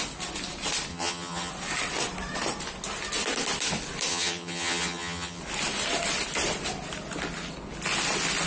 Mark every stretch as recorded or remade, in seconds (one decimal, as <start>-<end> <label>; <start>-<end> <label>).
0.0-0.9 recorded; 0.9-1.5 remade; 1.5-4.1 recorded; 4.1-5.4 remade; 5.4-8.5 recorded